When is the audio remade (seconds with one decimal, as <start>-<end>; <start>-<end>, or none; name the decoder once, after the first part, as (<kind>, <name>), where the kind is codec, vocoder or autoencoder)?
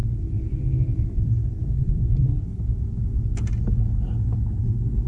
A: none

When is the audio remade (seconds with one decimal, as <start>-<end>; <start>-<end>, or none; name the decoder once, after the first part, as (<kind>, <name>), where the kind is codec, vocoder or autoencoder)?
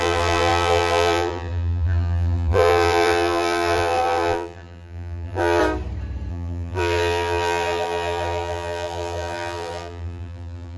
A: 0.0-5.6 (vocoder, BigVGAN v2); 6.3-10.8